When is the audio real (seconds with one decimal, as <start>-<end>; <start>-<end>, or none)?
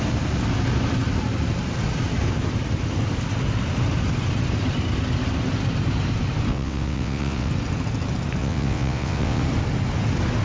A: 0.0-6.5; 7.5-8.4; 9.4-10.4